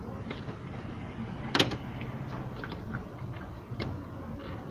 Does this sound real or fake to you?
real